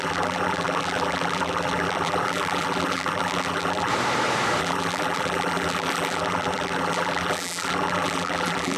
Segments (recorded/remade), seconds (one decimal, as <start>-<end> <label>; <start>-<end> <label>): 0.0-3.9 remade; 3.9-4.6 recorded; 4.6-8.8 remade